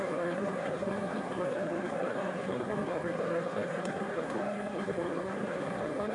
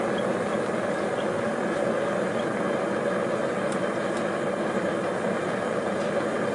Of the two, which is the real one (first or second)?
second